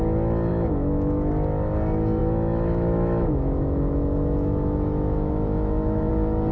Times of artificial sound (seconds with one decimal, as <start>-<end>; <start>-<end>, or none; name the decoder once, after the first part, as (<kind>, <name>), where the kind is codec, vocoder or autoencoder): 0.5-1.3 (autoencoder, DAC-VAE); 2.2-6.1